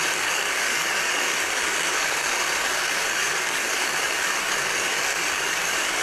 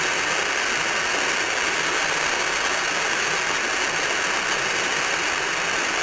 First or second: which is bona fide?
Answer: second